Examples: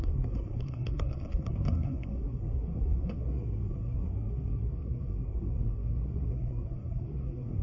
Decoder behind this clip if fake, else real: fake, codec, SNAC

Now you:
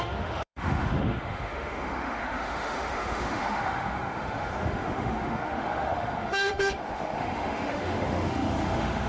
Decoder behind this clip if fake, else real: fake, autoencoder, DAC-VAE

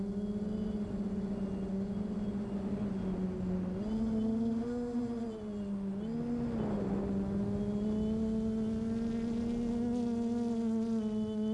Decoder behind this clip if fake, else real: real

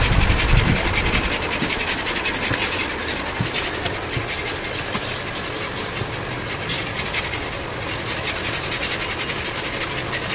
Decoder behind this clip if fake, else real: real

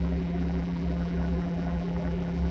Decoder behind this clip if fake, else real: fake, vocoder, BigVGAN v2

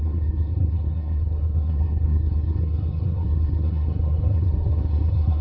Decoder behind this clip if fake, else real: fake, codec, SNAC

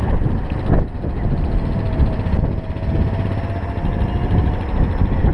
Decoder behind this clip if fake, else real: real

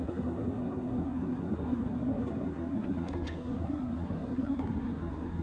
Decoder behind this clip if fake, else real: fake, codec, SNAC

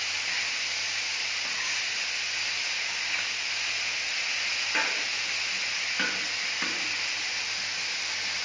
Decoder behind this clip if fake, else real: real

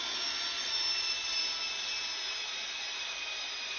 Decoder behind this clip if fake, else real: real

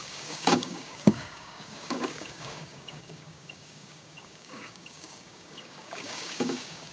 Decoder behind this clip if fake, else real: fake, codec, DAC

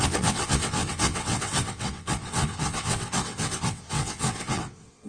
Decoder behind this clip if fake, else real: fake, vocoder, WaveNeXt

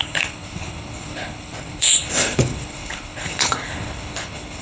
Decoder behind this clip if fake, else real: fake, codec, HILCodec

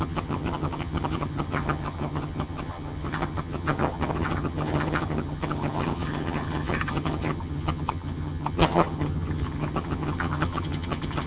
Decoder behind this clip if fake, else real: fake, vocoder, HiFi-GAN